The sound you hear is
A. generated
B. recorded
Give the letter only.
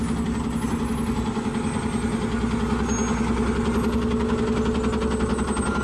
B